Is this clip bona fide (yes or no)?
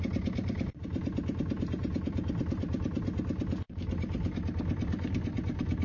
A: no